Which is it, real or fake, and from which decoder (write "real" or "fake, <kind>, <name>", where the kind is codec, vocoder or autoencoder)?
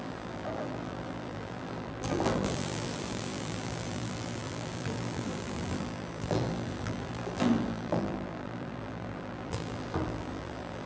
fake, vocoder, BigVGAN v2